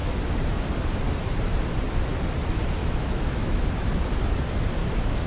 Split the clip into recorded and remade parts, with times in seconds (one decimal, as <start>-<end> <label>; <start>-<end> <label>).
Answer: 0.0-2.8 recorded; 2.8-3.6 remade; 3.6-4.8 recorded; 4.8-5.3 remade